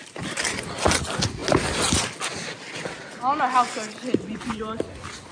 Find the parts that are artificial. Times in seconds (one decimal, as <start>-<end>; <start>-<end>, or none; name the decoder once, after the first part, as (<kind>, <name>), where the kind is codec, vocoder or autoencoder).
none